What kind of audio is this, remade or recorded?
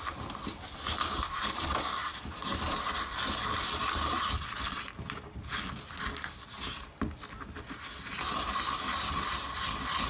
recorded